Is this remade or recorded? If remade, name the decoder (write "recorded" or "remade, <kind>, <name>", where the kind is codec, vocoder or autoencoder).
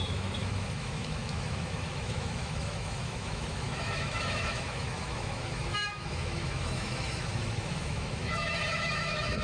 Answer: remade, autoencoder, DAC-VAE